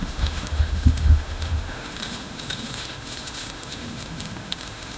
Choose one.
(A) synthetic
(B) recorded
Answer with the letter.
A